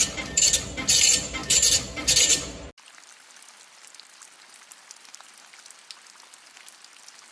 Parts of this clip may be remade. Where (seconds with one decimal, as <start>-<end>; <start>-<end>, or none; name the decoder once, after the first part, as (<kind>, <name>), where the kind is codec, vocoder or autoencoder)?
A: none